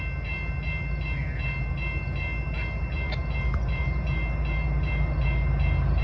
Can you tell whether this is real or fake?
real